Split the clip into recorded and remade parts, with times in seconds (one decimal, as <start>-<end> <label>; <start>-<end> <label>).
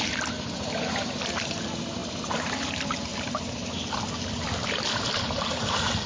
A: 0.0-6.1 recorded